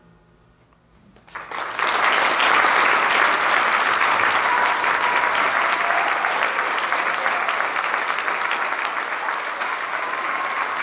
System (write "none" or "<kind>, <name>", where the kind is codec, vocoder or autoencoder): none